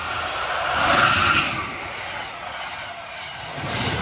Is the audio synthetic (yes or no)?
no